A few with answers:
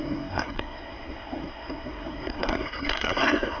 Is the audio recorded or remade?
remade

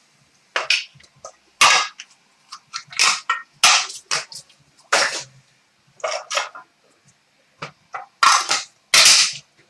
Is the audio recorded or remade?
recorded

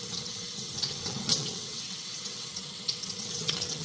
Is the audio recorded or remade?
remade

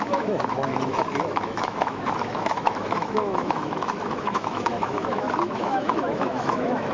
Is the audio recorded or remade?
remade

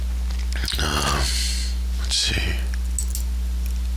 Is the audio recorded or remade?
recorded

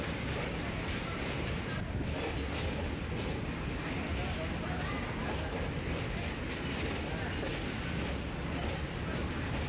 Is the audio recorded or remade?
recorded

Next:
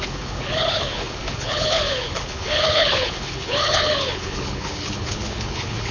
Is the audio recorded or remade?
remade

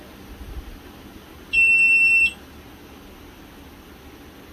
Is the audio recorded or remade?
recorded